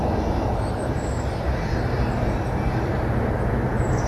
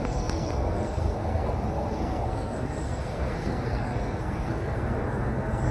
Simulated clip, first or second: second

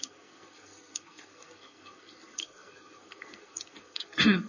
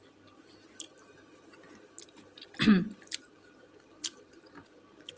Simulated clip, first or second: first